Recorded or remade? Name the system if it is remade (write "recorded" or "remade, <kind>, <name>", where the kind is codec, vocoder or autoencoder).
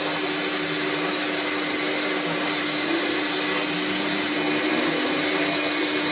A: recorded